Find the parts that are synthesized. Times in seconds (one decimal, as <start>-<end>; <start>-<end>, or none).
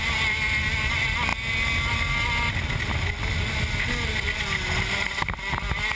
none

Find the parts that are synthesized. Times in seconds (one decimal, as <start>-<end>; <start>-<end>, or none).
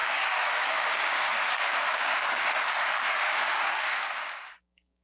0.0-5.0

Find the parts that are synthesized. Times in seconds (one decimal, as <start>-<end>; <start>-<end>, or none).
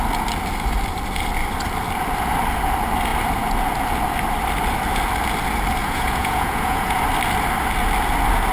5.8-7.0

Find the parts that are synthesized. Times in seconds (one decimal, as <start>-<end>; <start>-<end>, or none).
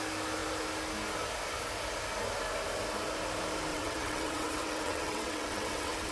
3.7-6.1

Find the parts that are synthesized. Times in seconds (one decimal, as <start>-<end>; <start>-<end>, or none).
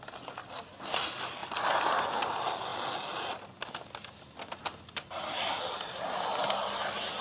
none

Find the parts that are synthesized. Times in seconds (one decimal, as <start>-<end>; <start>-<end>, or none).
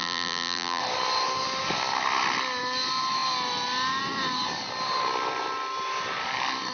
0.0-0.8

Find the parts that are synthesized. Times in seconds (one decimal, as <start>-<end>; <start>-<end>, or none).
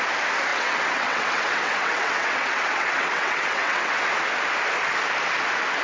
0.5-4.0